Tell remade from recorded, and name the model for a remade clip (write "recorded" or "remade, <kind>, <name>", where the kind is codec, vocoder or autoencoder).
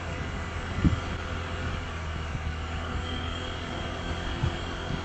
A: remade, codec, DAC